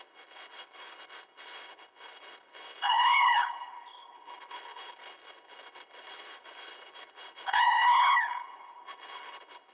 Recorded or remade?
remade